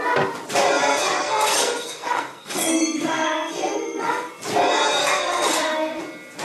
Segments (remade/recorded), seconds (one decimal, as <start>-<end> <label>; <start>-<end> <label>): 0.0-0.8 recorded; 0.8-4.3 remade; 4.3-5.0 recorded; 5.0-6.0 remade; 6.0-6.4 recorded